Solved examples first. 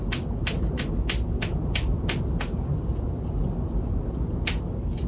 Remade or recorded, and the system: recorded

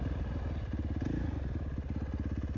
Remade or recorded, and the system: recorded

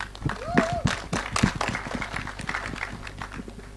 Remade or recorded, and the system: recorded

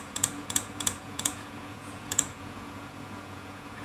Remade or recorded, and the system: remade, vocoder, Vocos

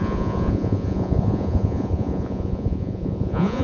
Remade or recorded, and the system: remade, vocoder, Vocos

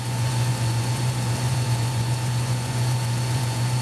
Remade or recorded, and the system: remade, vocoder, Vocos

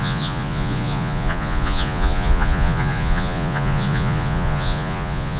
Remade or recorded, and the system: remade, vocoder, Vocos